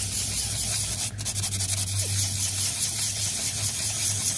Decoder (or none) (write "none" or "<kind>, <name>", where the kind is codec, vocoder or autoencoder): none